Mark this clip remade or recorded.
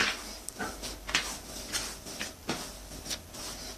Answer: recorded